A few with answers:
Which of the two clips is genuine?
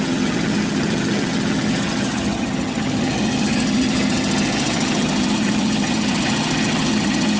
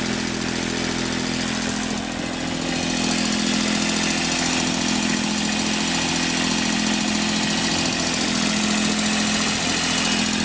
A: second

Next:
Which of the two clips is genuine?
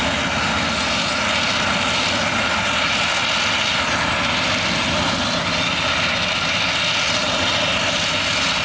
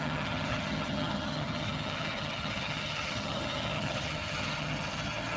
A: first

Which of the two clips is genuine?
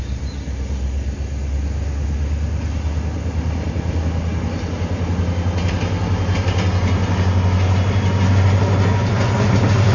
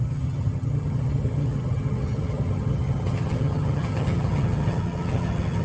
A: first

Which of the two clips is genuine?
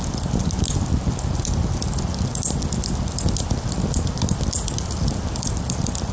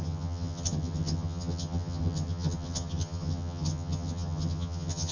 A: first